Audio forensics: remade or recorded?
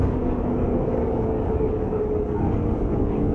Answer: remade